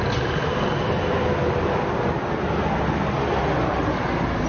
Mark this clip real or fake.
real